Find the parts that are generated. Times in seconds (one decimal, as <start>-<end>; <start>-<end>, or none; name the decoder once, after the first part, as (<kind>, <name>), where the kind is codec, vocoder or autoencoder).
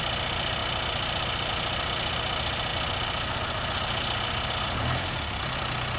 none